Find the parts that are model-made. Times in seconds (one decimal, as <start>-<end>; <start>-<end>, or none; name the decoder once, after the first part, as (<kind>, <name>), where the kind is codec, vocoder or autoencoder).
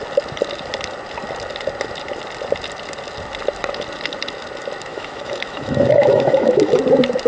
4.9-6.8 (autoencoder, DAC-VAE)